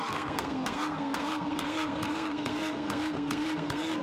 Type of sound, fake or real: fake